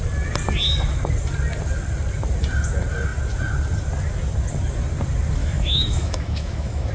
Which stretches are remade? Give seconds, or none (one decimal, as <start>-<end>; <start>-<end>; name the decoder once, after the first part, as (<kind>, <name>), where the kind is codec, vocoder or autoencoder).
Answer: 5.4-6.9 (autoencoder, DAC-VAE)